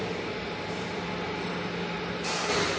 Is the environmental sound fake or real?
real